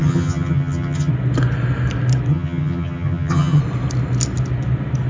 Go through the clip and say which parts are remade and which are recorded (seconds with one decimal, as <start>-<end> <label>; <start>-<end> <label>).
0.0-1.1 remade; 1.1-2.3 recorded; 2.3-3.6 remade; 3.6-5.1 recorded